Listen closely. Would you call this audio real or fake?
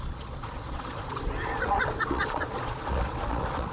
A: fake